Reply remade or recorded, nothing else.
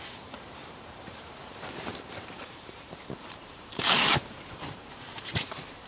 remade